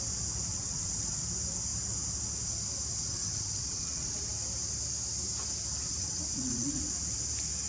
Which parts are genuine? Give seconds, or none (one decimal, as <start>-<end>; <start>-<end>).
0.0-0.5; 1.2-2.9; 4.2-6.0; 6.9-7.7